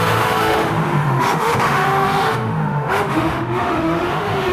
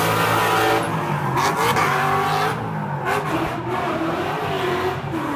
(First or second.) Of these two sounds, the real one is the second